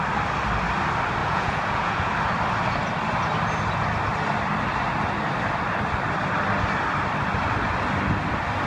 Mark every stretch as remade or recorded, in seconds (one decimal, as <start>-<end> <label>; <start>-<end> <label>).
0.0-1.2 recorded; 1.2-2.1 remade; 2.1-8.7 recorded